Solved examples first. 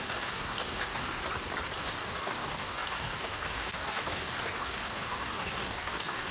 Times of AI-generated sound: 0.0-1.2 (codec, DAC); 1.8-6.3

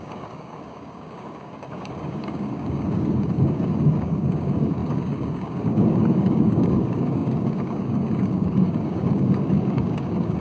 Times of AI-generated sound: 0.0-10.4 (codec, DAC)

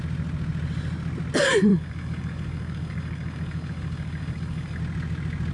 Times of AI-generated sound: 1.7-4.8 (codec, DAC)